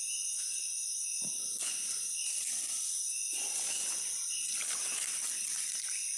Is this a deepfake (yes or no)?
no